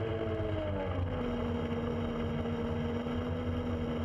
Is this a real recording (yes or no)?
yes